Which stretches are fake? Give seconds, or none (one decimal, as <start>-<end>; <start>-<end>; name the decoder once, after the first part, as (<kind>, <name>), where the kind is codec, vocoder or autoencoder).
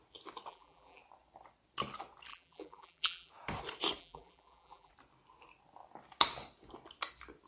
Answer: 0.5-1.0 (vocoder, BigVGAN v2); 2.3-3.3; 4.0-4.9